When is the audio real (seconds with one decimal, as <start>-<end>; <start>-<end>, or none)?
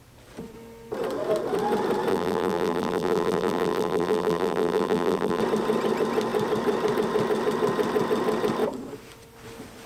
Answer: 0.0-2.1; 5.4-9.9